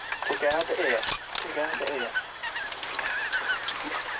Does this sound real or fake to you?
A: real